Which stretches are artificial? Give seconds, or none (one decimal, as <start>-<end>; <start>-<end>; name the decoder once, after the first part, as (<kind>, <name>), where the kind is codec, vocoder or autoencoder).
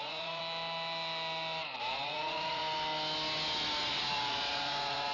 0.0-0.4 (vocoder, Vocos); 1.8-2.6; 3.9-5.1